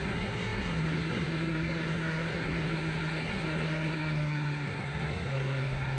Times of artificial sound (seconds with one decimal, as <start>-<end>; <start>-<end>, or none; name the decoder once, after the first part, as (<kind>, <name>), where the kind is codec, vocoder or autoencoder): 0.0-6.0 (codec, SNAC)